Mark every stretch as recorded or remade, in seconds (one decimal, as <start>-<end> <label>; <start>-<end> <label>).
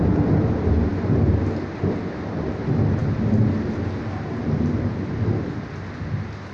0.0-6.5 recorded